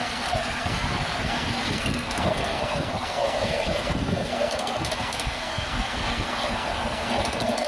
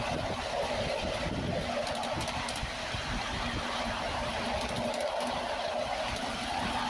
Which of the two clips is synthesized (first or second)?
first